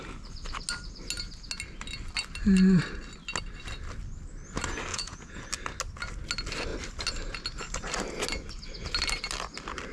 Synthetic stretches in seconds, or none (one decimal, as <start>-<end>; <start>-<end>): 4.9-5.4